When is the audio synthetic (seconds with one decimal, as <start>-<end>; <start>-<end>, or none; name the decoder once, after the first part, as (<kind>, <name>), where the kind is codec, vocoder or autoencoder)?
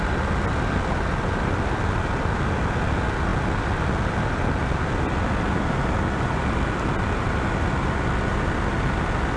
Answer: none